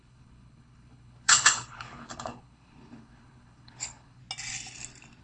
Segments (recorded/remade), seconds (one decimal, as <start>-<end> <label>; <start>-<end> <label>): 0.0-4.2 remade; 4.2-5.2 recorded